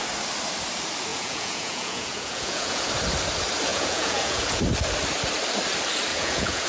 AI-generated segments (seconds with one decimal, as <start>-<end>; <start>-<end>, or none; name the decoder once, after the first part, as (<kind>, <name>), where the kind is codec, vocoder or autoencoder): 1.1-2.9 (vocoder, Vocos); 3.7-4.6; 6.1-6.7